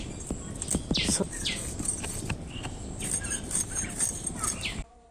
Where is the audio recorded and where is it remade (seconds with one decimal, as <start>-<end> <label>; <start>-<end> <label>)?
0.0-5.1 recorded